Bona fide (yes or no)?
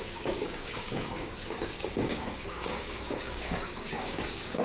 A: no